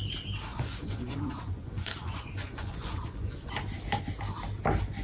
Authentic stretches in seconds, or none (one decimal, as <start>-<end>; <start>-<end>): 0.0-0.5; 3.5-5.0